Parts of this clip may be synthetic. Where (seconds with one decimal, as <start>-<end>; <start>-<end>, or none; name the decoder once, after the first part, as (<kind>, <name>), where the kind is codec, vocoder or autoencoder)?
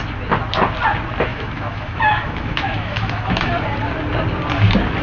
1.3-3.5 (autoencoder, DAC-VAE)